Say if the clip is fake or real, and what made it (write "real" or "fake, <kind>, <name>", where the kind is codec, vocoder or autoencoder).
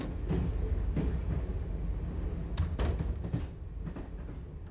real